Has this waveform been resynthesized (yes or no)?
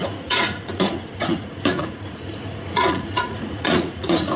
yes